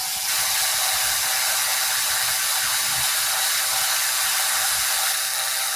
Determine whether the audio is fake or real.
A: real